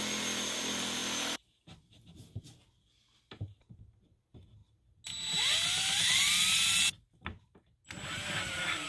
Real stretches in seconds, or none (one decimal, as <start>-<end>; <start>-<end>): 0.0-8.9